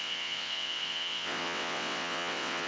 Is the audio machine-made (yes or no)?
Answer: yes